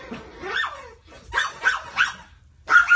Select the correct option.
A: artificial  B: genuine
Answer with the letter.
B